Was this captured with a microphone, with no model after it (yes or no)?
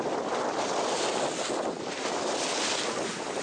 yes